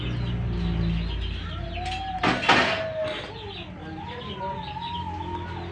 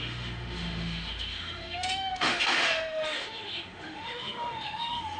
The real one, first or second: first